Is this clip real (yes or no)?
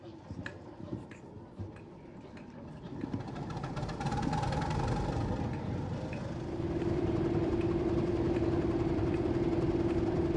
no